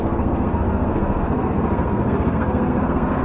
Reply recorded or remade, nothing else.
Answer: remade